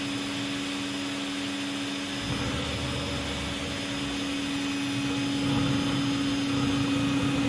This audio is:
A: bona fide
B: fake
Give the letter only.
A